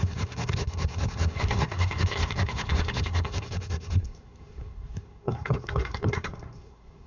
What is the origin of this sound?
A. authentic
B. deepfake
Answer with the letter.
B